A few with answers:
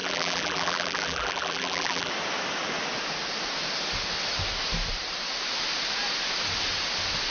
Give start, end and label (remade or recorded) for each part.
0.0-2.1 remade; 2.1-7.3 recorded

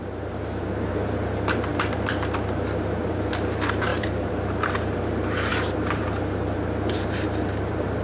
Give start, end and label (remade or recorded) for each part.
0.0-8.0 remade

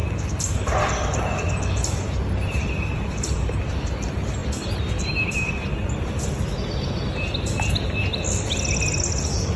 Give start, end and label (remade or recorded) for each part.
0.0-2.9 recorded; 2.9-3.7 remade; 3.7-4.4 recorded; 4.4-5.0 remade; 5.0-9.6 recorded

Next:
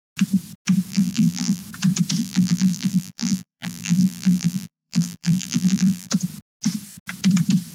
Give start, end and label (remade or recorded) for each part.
0.0-0.9 recorded; 0.9-1.6 remade; 1.6-2.2 recorded; 2.2-6.1 remade; 6.1-7.7 recorded

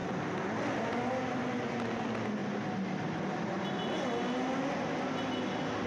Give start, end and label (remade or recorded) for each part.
0.0-5.9 recorded